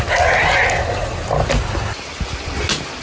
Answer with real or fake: real